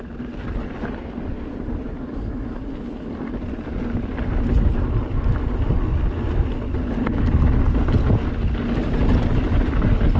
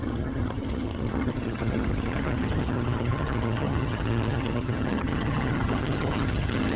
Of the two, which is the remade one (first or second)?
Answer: second